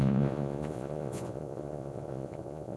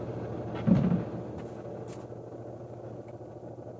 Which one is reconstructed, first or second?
first